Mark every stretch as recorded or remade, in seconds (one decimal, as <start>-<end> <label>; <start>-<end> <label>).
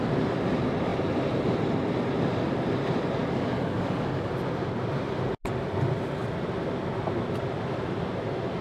0.0-3.2 recorded; 3.2-4.3 remade; 4.3-8.6 recorded